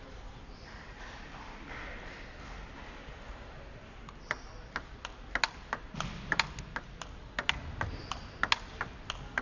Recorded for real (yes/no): yes